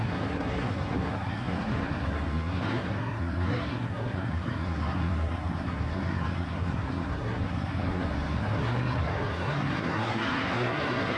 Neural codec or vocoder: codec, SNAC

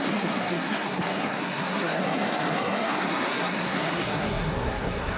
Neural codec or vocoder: codec, SNAC